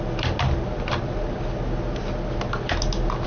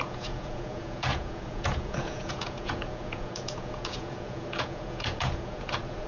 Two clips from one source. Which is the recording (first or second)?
first